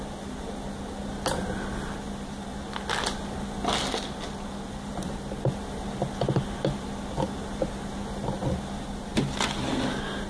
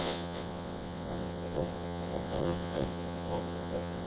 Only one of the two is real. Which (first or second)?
first